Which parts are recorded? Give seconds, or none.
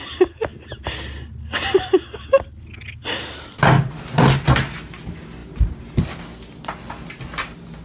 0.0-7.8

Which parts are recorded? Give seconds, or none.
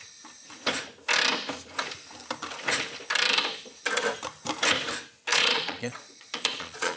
0.0-5.3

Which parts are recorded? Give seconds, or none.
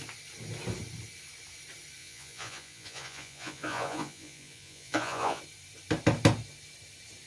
0.0-2.0; 5.4-7.3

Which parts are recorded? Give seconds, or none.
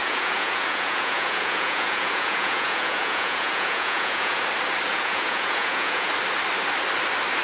4.4-4.9; 6.1-7.4